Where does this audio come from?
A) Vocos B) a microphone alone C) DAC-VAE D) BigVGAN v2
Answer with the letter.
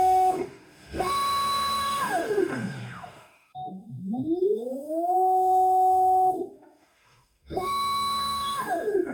C